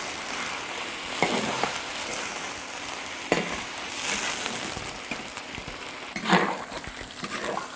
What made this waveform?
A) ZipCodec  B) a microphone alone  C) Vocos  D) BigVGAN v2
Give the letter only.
B